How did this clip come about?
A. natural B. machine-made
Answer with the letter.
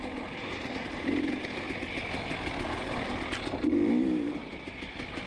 A